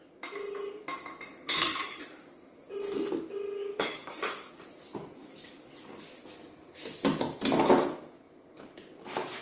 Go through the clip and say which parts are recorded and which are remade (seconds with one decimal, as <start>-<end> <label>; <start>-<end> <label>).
0.0-1.4 recorded; 1.4-2.0 remade; 2.0-3.6 recorded; 3.6-4.6 remade; 4.6-5.2 recorded; 5.2-6.2 remade; 6.2-9.4 recorded